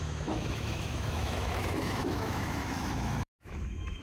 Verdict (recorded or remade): remade